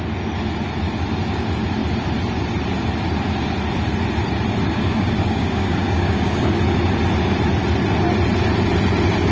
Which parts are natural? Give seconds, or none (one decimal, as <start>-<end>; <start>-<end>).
0.0-4.7; 6.6-9.3